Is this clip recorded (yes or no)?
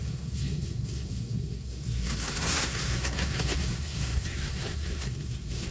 no